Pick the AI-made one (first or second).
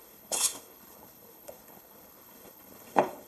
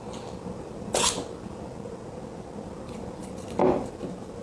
first